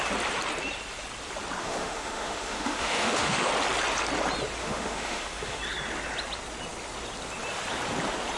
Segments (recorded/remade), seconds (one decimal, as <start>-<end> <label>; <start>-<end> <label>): 0.0-1.6 recorded; 1.6-3.5 remade; 3.5-4.6 recorded; 4.6-5.6 remade; 5.6-8.4 recorded